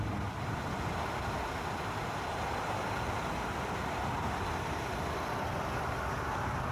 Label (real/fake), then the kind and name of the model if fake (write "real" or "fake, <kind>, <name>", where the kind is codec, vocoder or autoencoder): real